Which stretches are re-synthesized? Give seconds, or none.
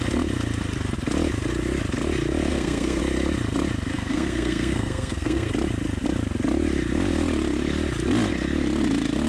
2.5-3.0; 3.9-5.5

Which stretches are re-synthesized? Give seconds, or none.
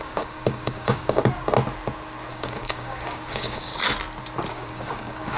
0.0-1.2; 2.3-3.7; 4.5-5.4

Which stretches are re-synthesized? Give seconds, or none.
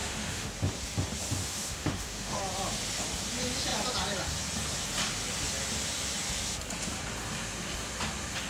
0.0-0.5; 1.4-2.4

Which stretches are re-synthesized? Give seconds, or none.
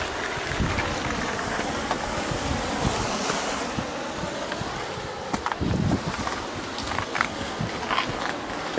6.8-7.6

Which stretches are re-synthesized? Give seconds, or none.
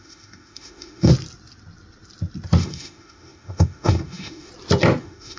0.0-1.1; 2.6-4.5; 5.0-5.4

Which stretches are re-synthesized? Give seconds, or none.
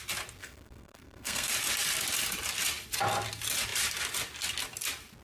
0.4-1.5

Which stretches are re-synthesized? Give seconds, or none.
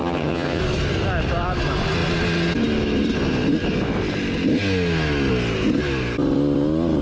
0.0-0.6